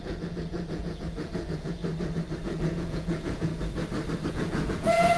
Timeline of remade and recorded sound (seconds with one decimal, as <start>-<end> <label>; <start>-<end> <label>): 0.0-1.8 remade; 1.8-2.4 recorded; 2.4-3.5 remade; 3.5-4.3 recorded; 4.3-5.2 remade